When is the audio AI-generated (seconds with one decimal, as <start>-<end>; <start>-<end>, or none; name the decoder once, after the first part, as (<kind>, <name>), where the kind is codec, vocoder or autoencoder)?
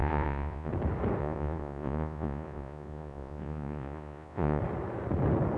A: 0.0-0.7 (vocoder, Vocos); 1.2-4.6